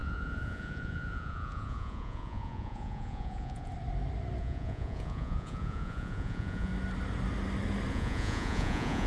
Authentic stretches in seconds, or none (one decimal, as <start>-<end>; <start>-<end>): 3.7-4.4; 6.7-7.9